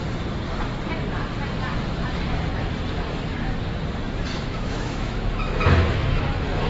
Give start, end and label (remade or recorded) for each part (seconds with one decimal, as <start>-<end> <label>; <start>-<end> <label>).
0.0-4.3 recorded; 4.3-6.2 remade; 6.2-6.7 recorded